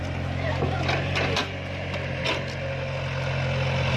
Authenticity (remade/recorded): recorded